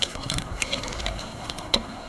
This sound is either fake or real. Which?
fake